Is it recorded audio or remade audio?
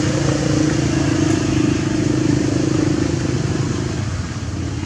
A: recorded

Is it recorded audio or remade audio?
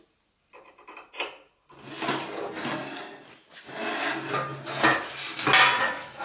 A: recorded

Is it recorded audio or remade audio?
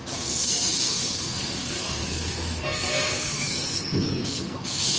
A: remade